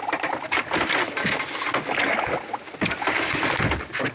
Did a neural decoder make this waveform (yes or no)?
no